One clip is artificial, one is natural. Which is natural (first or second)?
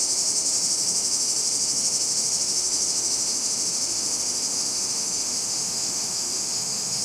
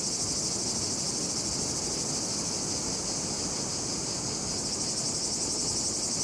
second